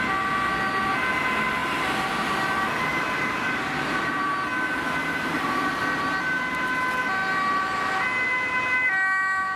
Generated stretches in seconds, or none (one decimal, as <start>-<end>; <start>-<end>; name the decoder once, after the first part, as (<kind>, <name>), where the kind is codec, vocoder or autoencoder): 1.6-2.3 (vocoder, BigVGAN v2); 2.9-4.3; 5.0-5.7